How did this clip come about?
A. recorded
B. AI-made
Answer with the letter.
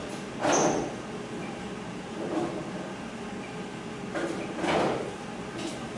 A